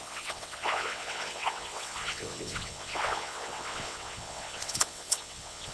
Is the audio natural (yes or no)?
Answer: no